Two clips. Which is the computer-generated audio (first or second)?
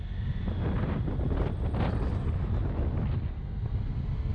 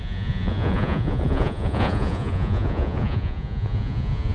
second